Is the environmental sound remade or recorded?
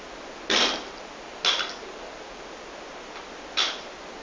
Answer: recorded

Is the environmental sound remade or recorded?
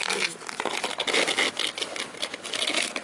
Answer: recorded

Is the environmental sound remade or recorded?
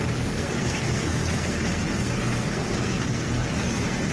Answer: remade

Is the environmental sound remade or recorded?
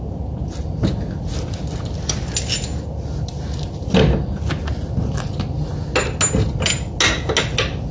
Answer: recorded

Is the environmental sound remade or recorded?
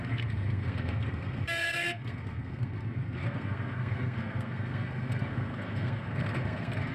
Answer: remade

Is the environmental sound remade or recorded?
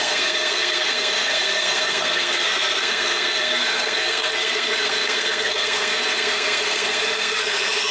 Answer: remade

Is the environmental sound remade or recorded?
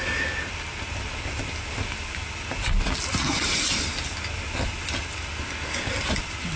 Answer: recorded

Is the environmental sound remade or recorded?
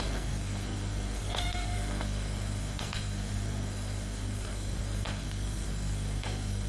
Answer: remade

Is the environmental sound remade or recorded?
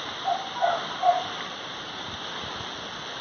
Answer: recorded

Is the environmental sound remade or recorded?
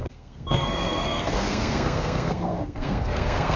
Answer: remade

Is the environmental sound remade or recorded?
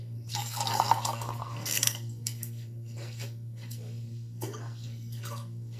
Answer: remade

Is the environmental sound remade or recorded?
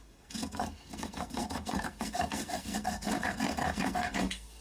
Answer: remade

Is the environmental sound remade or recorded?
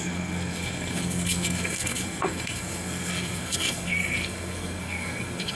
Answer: remade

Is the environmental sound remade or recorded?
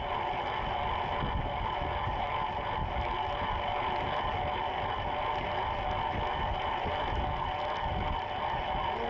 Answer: recorded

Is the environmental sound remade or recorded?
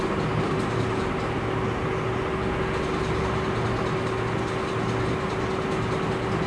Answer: recorded